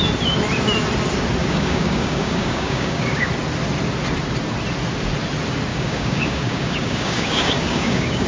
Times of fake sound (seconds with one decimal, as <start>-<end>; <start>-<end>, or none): 1.4-3.3; 5.7-8.3